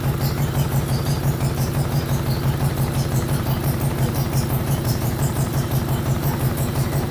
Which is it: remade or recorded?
remade